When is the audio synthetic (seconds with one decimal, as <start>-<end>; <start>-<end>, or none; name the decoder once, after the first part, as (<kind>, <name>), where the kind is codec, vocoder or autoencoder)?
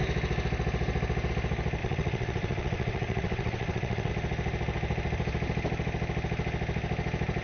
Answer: 1.8-4.1 (vocoder, WaveNeXt)